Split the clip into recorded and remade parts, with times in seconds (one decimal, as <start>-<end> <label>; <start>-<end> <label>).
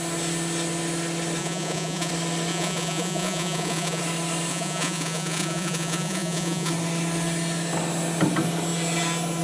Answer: 0.0-1.4 recorded; 1.4-2.1 remade; 2.1-2.5 recorded; 2.5-4.0 remade; 4.0-4.5 recorded; 4.5-6.7 remade; 6.7-9.4 recorded